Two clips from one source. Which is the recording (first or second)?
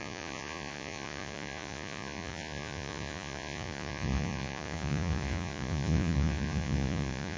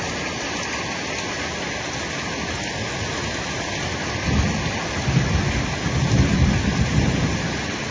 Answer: second